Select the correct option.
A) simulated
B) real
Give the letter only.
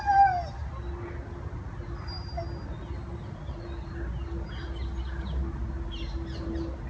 B